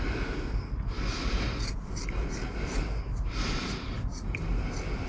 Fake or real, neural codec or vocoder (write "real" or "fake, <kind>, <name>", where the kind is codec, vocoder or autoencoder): real